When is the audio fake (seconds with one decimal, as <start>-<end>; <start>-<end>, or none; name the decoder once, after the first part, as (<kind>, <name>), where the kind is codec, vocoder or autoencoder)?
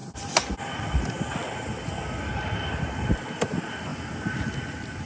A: none